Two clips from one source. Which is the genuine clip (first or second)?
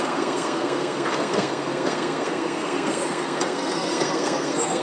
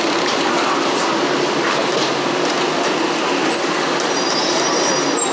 second